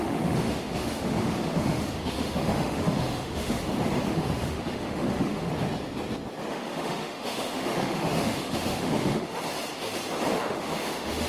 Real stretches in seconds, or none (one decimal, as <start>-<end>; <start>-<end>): 3.6-4.1; 5.5-6.5; 9.4-10.3